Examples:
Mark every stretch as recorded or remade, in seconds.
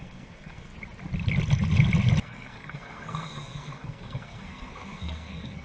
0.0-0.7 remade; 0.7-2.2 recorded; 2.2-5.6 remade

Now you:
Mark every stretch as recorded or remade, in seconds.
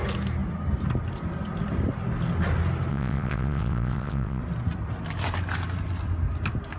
0.0-2.9 recorded; 2.9-4.4 remade; 4.4-6.8 recorded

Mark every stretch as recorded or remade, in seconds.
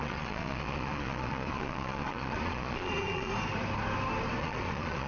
0.0-3.3 remade; 3.3-4.4 recorded; 4.4-5.1 remade